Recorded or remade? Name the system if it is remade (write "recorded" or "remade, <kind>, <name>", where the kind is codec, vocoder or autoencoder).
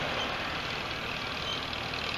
recorded